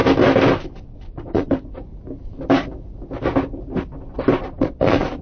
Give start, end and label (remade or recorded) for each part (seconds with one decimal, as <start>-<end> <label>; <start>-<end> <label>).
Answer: 0.0-1.1 recorded; 1.1-1.9 remade; 1.9-4.6 recorded; 4.6-5.2 remade